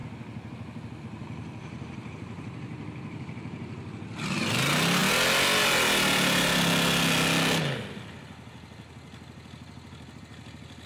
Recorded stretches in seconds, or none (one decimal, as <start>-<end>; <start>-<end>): 0.0-1.6; 4.5-10.9